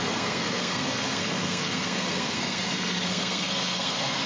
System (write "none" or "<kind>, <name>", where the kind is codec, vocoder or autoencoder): codec, SNAC